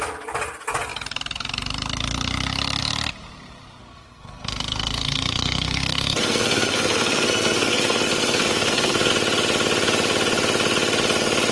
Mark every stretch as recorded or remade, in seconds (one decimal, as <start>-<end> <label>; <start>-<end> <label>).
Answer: 0.0-3.8 recorded; 3.8-9.1 remade; 9.1-11.5 recorded